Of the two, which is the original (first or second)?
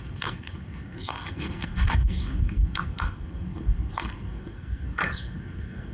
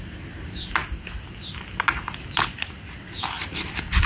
second